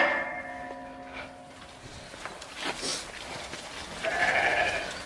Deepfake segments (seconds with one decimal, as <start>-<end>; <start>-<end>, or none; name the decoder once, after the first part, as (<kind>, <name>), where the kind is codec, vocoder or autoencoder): none

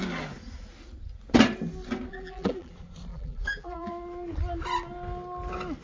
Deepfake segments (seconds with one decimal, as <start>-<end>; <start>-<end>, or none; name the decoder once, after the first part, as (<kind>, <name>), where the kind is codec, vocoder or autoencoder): 2.1-2.7 (vocoder, BigVGAN v2); 3.1-3.9

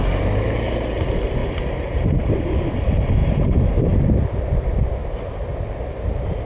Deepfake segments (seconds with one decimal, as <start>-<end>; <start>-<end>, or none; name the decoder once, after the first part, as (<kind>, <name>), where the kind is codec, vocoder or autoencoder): 1.4-2.3 (vocoder, BigVGAN v2); 3.2-4.0; 5.0-5.5